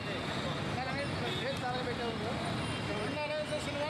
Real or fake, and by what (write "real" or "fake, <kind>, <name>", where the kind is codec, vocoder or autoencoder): real